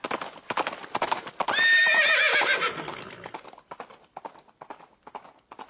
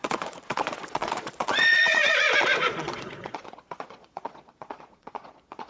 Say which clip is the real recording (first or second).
first